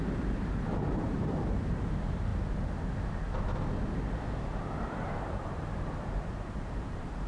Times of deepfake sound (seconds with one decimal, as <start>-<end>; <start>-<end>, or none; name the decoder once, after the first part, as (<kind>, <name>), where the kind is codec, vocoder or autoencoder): 0.0-2.3 (vocoder, BigVGAN v2); 4.8-7.3